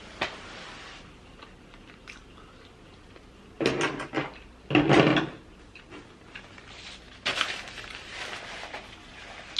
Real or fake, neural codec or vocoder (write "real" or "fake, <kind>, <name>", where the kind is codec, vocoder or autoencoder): real